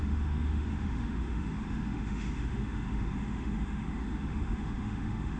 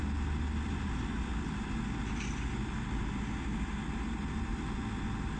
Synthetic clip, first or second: first